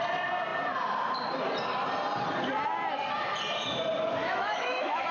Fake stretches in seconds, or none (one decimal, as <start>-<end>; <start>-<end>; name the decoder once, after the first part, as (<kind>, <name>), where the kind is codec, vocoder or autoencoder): 4.2-5.1 (autoencoder, DAC-VAE)